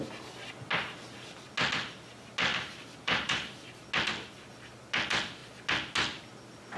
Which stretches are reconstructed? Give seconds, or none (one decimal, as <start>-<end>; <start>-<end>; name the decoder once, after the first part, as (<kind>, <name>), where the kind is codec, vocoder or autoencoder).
2.5-3.6 (vocoder, BigVGAN v2)